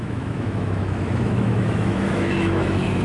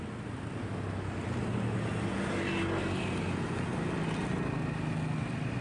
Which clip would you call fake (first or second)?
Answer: first